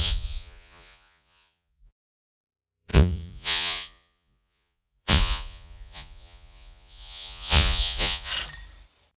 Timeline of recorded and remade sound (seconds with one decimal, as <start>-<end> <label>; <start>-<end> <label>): 0.0-8.3 remade; 8.3-9.2 recorded